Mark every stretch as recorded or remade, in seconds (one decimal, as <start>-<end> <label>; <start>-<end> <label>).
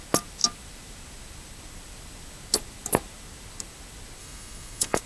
0.0-4.2 recorded; 4.2-5.0 remade